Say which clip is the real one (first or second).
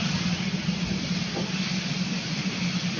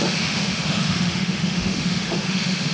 first